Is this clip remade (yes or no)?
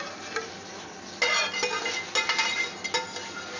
no